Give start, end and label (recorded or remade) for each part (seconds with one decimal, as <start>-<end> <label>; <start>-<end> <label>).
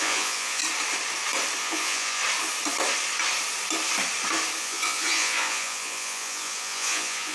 0.0-0.6 remade; 0.6-1.6 recorded; 1.6-2.2 remade; 2.2-4.6 recorded; 4.6-7.3 remade